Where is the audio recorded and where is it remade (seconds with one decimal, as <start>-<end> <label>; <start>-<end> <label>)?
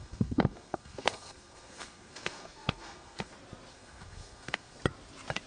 0.0-3.3 remade; 3.3-3.7 recorded; 3.7-4.8 remade; 4.8-5.5 recorded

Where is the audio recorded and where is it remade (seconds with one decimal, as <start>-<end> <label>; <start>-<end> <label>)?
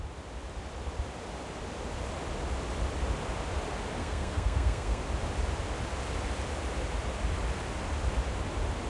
0.0-4.0 recorded; 4.0-5.0 remade; 5.0-8.9 recorded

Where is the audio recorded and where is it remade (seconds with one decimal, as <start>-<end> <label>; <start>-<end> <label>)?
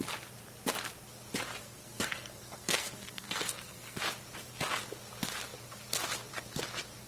0.0-1.6 recorded; 1.6-4.0 remade; 4.0-7.1 recorded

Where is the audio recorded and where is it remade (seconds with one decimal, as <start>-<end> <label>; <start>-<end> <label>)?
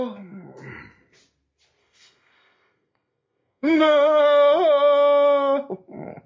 0.0-1.8 recorded; 1.8-4.2 remade; 4.2-6.3 recorded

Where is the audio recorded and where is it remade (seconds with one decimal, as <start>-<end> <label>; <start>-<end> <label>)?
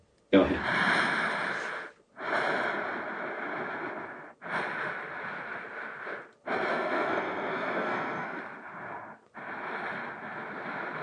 0.0-6.7 recorded; 6.7-8.4 remade; 8.4-11.0 recorded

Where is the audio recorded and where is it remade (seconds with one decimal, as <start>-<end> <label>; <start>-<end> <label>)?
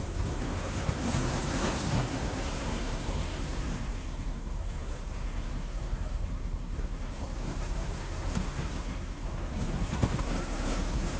0.0-11.2 remade